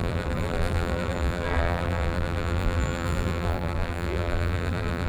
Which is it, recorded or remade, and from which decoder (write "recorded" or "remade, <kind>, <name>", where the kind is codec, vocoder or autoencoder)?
remade, vocoder, BigVGAN v2